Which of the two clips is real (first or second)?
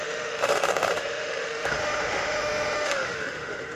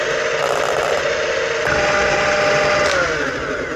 second